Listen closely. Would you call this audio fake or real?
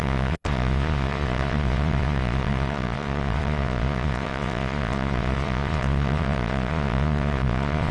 fake